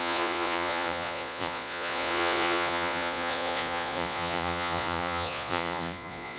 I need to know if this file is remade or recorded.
remade